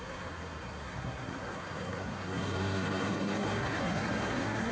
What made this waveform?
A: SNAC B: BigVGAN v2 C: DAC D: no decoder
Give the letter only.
A